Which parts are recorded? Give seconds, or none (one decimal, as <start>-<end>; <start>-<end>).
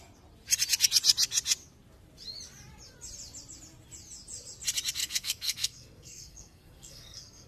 0.0-5.0